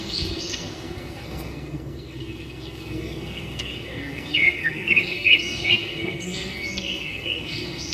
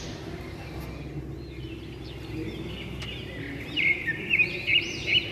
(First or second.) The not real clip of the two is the first